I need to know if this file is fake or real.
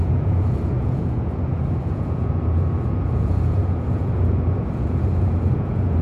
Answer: fake